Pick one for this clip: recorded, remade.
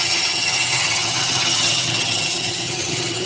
remade